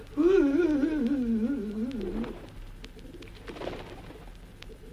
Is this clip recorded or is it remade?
recorded